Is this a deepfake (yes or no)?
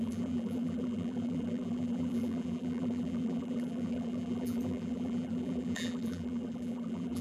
yes